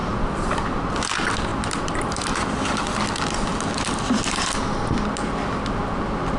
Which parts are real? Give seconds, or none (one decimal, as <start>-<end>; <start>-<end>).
0.8-1.5; 4.2-6.4